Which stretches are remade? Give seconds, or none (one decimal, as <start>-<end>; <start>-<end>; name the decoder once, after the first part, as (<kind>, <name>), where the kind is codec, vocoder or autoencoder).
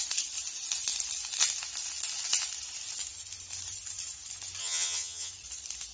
4.6-5.3 (vocoder, HiFi-GAN)